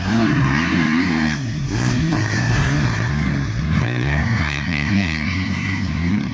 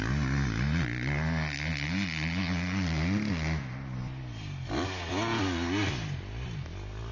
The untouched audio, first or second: second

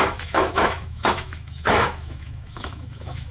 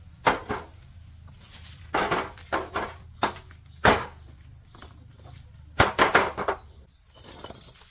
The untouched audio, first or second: second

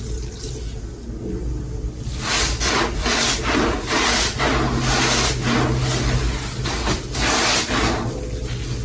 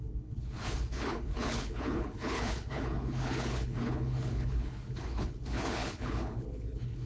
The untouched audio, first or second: first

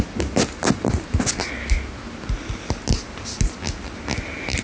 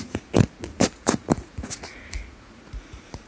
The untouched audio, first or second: first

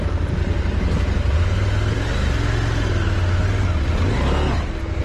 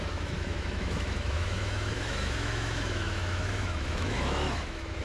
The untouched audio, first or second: first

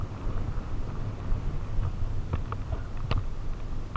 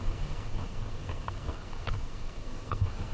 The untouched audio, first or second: first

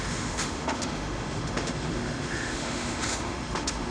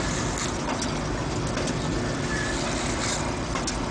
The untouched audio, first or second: second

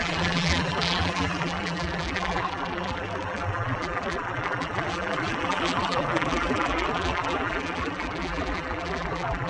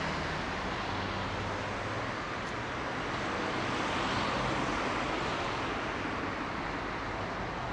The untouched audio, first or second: second